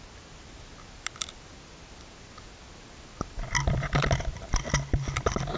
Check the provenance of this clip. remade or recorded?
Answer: recorded